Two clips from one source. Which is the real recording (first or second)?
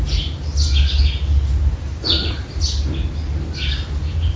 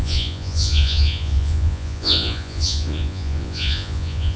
first